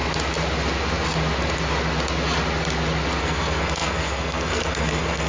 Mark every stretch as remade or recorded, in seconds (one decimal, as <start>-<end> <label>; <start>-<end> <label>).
0.0-3.2 recorded; 3.2-5.3 remade